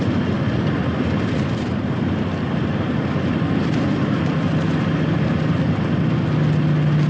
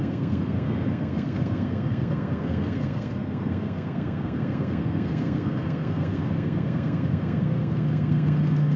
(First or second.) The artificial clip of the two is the second